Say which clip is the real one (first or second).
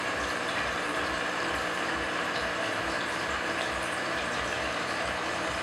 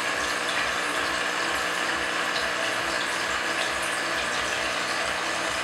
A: second